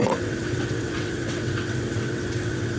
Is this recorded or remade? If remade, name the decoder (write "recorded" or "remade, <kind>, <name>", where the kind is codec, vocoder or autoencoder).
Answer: remade, vocoder, WaveNeXt